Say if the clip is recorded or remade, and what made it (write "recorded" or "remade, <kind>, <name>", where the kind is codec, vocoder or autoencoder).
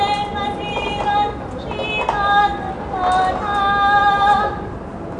recorded